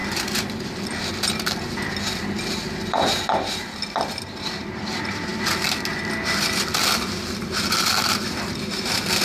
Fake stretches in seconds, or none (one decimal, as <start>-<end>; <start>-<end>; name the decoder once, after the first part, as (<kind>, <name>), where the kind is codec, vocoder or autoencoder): 0.0-1.0 (vocoder, BigVGAN v2)